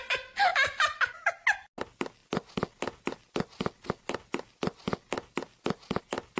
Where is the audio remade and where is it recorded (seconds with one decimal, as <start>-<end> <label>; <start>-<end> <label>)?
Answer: 0.0-0.5 recorded; 0.5-1.0 remade; 1.0-6.4 recorded